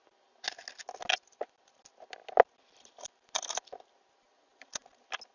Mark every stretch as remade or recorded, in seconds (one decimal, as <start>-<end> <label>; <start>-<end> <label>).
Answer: 0.0-5.3 recorded